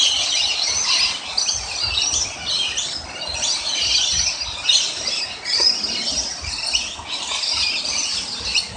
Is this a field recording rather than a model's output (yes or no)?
yes